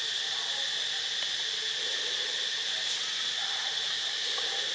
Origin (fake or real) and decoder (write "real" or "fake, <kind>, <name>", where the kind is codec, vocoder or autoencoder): real